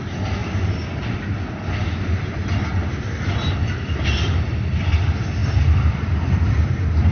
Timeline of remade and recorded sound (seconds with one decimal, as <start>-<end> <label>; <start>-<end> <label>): 0.0-0.4 recorded; 0.4-1.4 remade; 1.4-2.8 recorded; 2.8-4.8 remade; 4.8-5.4 recorded; 5.4-6.5 remade; 6.5-7.1 recorded